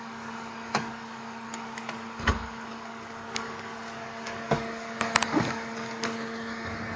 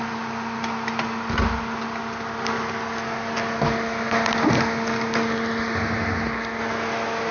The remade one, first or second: first